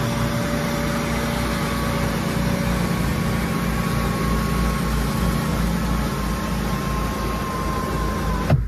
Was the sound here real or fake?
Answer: real